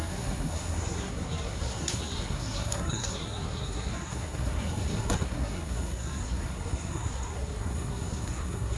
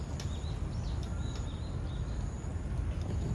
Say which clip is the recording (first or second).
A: second